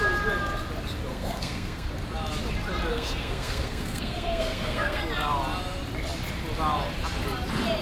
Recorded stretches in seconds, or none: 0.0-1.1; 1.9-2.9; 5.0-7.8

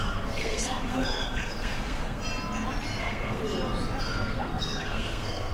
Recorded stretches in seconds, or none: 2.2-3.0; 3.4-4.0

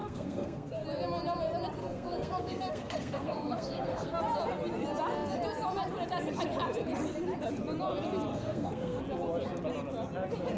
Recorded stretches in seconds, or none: 0.8-1.8; 4.2-8.3; 9.0-10.6

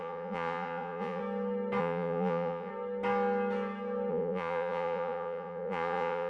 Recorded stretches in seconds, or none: 1.2-1.8; 2.7-4.1

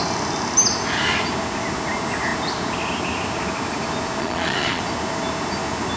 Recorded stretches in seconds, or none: 0.0-4.2; 4.8-6.0

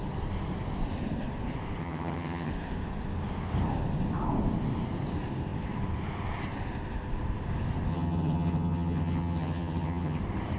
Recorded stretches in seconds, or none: 0.0-1.8; 2.5-7.9; 10.2-10.6